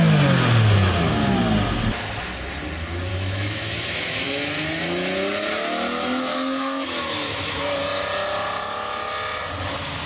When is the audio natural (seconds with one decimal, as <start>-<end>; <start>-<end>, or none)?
0.0-3.1; 4.8-6.3; 7.8-10.1